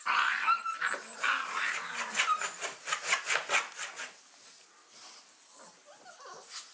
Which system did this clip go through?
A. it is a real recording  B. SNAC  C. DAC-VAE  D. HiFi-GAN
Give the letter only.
A